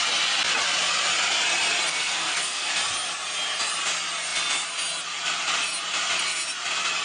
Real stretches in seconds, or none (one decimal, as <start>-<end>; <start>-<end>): 0.0-1.9; 2.7-7.0